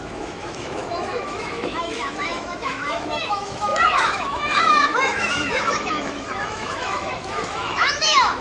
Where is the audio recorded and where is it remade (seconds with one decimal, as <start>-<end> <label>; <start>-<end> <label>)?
0.0-8.4 remade